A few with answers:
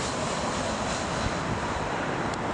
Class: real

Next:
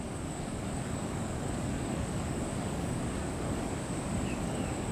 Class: fake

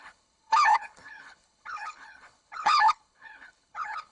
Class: fake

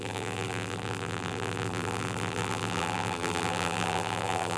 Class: fake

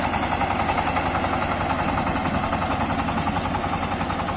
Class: real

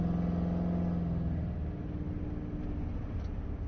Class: real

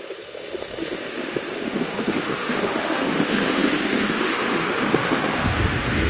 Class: fake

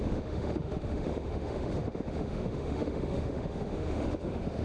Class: fake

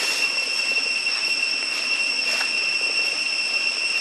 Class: real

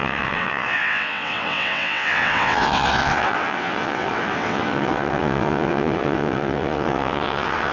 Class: fake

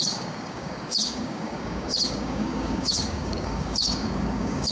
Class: fake